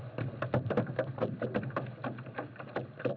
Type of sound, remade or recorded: recorded